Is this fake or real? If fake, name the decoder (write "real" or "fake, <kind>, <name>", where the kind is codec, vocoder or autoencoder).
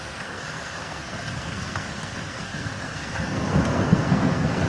fake, codec, SNAC